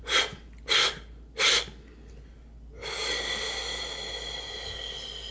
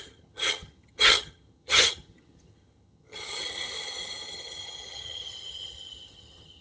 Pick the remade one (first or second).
second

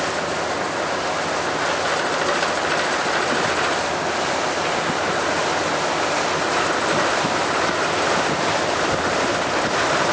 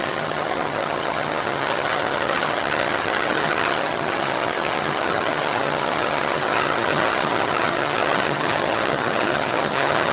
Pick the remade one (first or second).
second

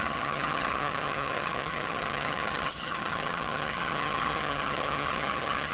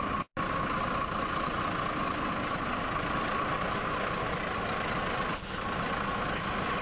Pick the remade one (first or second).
first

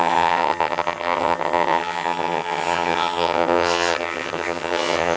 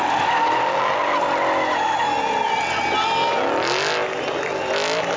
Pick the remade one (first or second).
first